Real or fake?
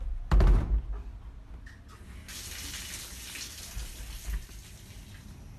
real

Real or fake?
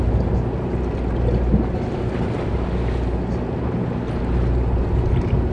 real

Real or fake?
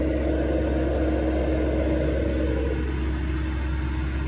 real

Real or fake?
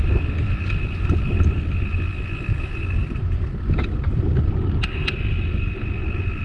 real